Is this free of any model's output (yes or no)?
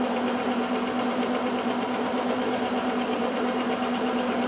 no